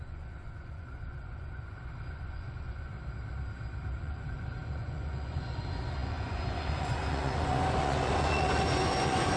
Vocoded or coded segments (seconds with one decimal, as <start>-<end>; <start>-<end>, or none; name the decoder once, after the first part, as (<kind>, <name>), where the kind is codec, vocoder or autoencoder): 0.0-2.9 (vocoder, Vocos); 4.0-9.4